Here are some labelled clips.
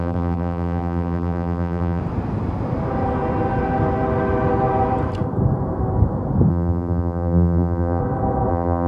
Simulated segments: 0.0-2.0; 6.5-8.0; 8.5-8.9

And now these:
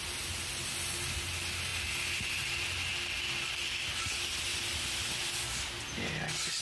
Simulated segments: none

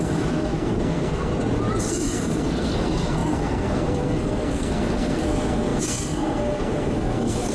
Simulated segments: 0.0-1.3; 1.8-7.5

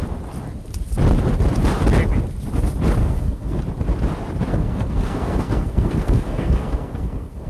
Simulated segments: 3.0-3.6; 4.5-7.5

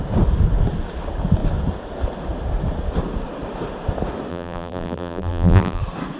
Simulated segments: 4.3-5.8

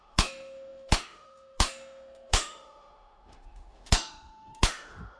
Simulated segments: 0.0-5.2

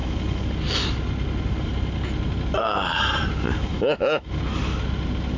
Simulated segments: 3.7-4.3